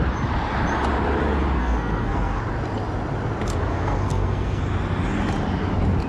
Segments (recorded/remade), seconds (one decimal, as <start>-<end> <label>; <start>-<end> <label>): 0.0-1.6 recorded; 1.6-2.4 remade; 2.4-3.7 recorded; 3.7-4.6 remade; 4.6-6.1 recorded